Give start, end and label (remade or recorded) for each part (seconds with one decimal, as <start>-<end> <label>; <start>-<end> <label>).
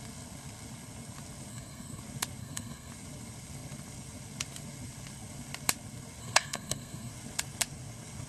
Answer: 0.0-1.5 recorded; 1.5-2.0 remade; 2.0-2.4 recorded; 2.4-2.9 remade; 2.9-6.2 recorded; 6.2-7.1 remade; 7.1-8.3 recorded